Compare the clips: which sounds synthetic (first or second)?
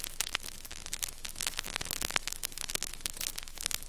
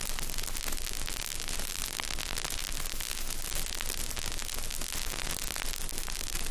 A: first